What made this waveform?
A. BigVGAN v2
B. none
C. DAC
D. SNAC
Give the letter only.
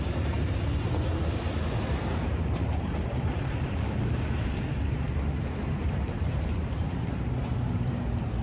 A